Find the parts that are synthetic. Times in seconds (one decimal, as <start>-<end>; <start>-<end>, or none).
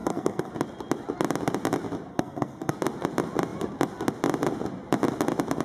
0.0-0.5; 2.1-2.7